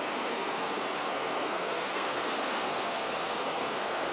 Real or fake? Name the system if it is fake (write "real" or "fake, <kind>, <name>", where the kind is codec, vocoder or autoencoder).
fake, codec, SNAC